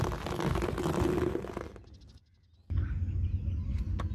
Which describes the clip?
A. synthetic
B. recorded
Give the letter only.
B